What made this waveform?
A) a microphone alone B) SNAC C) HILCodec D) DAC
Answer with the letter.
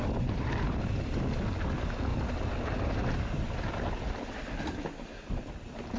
A